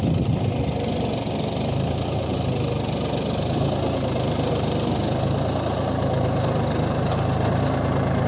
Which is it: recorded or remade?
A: recorded